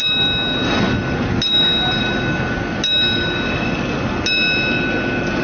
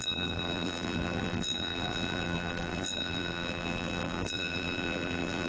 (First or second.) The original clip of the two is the first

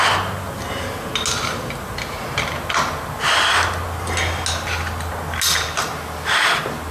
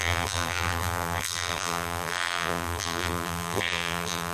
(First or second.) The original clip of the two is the first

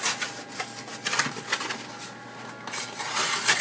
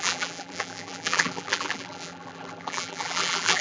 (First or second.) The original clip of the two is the first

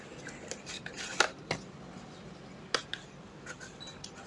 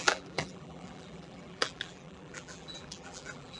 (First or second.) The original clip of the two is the first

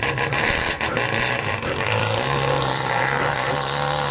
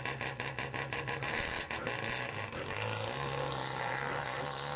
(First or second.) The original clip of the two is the second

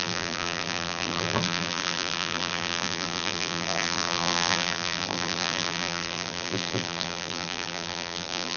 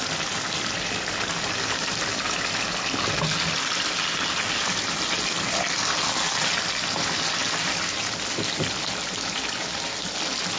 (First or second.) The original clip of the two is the second